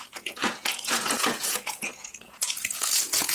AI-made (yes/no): yes